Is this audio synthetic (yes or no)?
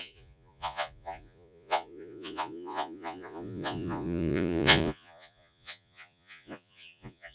yes